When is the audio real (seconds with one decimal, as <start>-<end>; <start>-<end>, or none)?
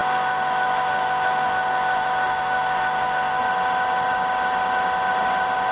3.4-5.7